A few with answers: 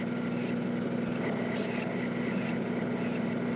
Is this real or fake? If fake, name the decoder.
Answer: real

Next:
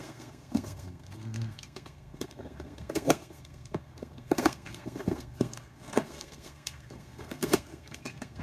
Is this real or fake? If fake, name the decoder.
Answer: fake, codec, SNAC